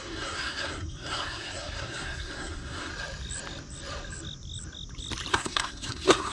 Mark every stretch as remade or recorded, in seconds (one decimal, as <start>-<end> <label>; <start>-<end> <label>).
0.0-2.9 remade; 2.9-5.3 recorded; 5.3-6.3 remade

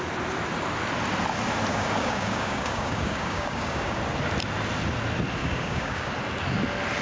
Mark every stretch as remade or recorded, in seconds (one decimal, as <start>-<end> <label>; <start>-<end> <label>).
0.0-1.7 recorded; 1.7-4.0 remade; 4.0-5.4 recorded; 5.4-6.1 remade; 6.1-7.0 recorded

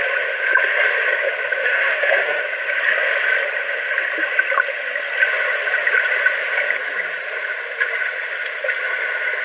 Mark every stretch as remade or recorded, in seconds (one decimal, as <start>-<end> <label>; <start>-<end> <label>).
0.0-1.6 recorded; 1.6-2.4 remade; 2.4-9.4 recorded

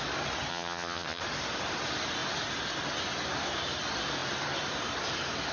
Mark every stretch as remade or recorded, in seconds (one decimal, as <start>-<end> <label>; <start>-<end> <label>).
0.0-0.5 recorded; 0.5-1.2 remade; 1.2-5.5 recorded

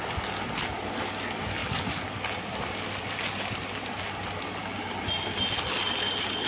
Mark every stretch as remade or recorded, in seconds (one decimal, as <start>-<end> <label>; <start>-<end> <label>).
0.0-1.6 recorded; 1.6-3.0 remade; 3.0-6.5 recorded